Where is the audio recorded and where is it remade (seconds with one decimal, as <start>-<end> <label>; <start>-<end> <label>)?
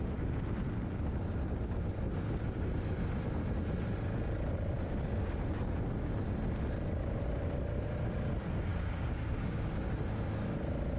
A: 0.0-8.7 recorded; 8.7-9.9 remade; 9.9-11.0 recorded